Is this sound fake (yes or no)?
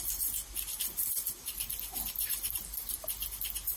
no